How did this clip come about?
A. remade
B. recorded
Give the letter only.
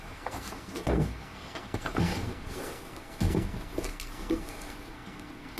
A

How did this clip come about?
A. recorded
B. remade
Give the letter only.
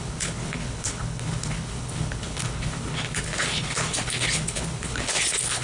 B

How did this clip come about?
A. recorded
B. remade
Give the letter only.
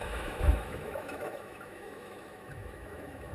B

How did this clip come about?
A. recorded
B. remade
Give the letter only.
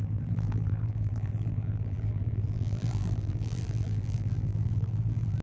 B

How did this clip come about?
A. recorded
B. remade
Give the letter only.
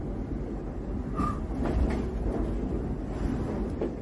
A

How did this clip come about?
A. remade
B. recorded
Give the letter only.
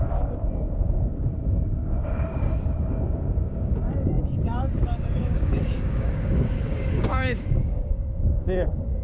A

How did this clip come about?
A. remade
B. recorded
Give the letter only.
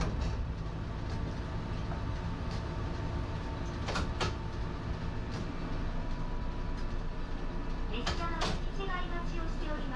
B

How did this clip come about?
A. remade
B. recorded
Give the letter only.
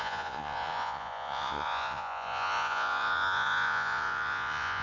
A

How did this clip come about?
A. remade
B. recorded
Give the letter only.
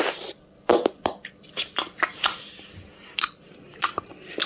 A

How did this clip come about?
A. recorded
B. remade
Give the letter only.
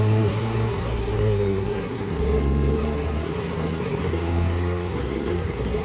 B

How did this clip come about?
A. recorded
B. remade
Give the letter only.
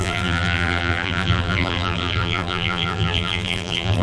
B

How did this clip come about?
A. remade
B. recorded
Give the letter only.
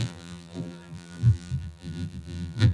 A